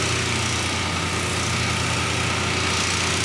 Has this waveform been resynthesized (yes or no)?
no